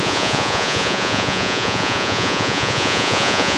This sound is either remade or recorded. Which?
remade